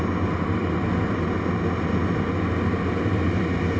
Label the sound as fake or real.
real